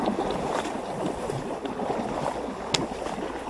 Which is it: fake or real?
real